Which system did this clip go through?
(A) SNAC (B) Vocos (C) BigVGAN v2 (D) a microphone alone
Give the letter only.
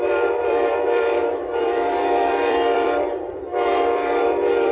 C